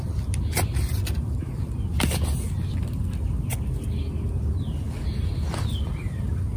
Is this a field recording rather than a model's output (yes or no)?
yes